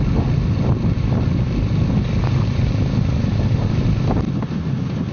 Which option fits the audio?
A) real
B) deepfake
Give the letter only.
A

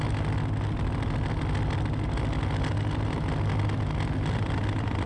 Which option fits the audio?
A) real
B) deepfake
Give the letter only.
A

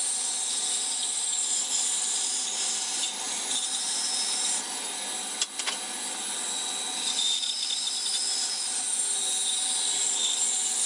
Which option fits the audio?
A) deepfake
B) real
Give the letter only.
B